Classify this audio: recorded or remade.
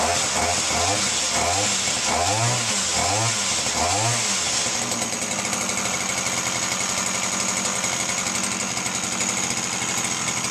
recorded